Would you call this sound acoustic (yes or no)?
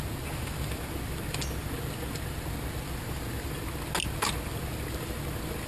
yes